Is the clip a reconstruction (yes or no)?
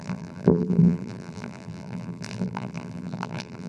yes